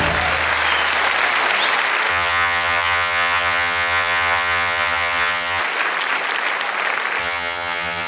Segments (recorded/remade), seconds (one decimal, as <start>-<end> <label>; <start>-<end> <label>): 0.0-2.1 recorded; 2.1-5.6 remade; 5.6-7.2 recorded; 7.2-8.1 remade